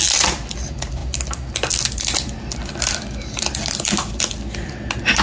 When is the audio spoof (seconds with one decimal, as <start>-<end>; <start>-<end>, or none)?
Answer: none